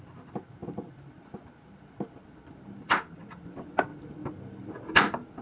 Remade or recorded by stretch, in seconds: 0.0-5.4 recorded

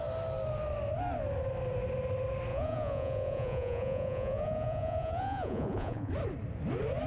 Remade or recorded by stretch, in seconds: 0.0-2.5 recorded; 2.5-6.1 remade; 6.1-7.1 recorded

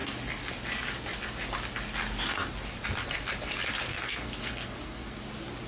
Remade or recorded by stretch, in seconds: 0.0-3.9 recorded; 3.9-5.2 remade; 5.2-5.7 recorded

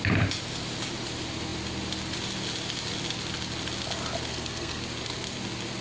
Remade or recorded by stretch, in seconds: 0.0-4.3 recorded; 4.3-4.8 remade; 4.8-5.8 recorded